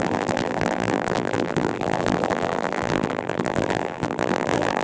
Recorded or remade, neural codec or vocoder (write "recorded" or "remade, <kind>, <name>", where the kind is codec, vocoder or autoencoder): remade, vocoder, BigVGAN v2